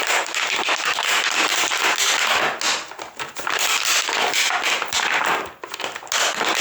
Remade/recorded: recorded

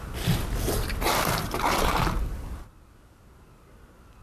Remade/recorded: recorded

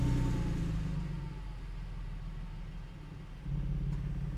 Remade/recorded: recorded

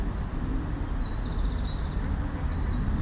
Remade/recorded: recorded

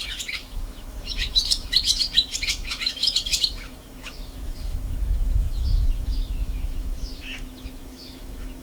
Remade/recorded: remade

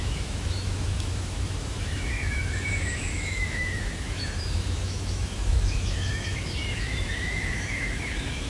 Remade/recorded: remade